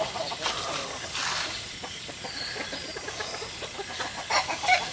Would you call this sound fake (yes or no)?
no